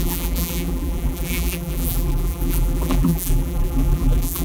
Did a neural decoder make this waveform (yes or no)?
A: yes